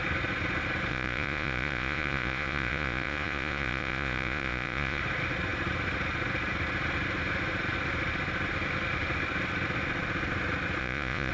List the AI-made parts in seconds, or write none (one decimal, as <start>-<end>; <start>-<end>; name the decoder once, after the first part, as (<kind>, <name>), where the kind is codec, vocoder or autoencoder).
0.9-5.0 (vocoder, Vocos); 10.8-11.3